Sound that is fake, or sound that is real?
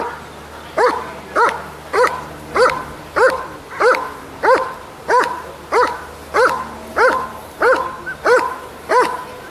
real